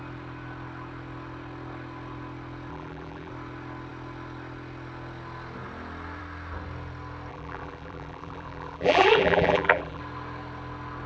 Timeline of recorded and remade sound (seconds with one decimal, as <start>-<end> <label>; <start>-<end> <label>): 0.0-2.7 recorded; 2.7-3.3 remade; 3.3-7.3 recorded; 7.3-10.0 remade; 10.0-11.1 recorded